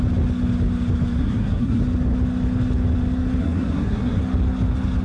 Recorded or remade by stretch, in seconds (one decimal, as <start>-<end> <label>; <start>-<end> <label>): 0.0-1.2 recorded; 1.2-1.8 remade; 1.8-3.4 recorded; 3.4-4.2 remade; 4.2-5.0 recorded